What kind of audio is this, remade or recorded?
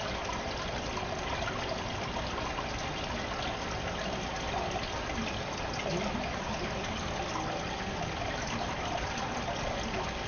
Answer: recorded